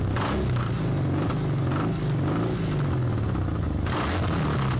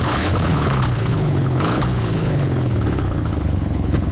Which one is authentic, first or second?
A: first